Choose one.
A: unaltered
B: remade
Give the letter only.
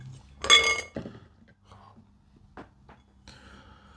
A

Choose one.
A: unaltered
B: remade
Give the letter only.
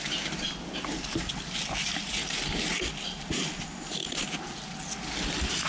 A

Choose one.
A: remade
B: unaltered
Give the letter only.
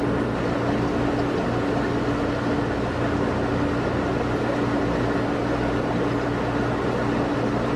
B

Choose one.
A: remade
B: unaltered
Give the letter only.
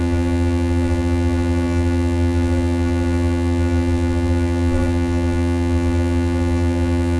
A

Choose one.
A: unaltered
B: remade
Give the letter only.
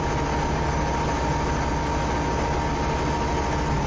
A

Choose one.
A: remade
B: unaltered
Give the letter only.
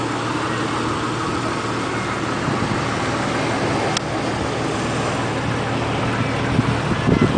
B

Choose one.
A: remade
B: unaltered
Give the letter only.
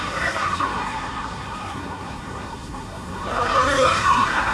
A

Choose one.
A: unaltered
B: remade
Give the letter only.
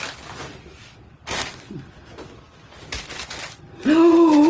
A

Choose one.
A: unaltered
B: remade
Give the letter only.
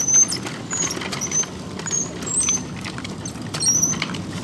A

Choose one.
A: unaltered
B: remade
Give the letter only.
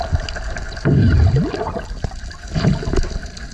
A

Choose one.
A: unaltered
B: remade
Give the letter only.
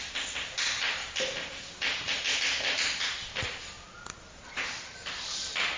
A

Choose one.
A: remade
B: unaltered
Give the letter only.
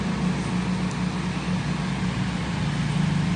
B